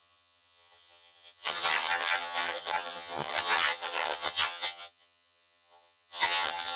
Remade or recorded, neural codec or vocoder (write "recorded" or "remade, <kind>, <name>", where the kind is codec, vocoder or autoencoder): remade, vocoder, HiFi-GAN